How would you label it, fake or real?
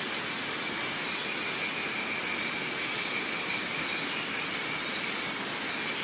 real